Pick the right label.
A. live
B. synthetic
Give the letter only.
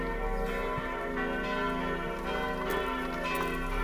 A